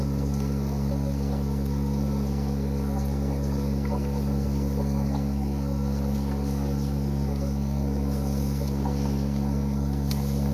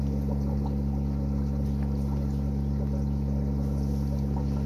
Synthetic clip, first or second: first